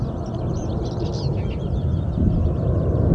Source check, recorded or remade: recorded